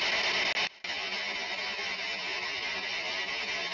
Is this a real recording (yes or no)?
yes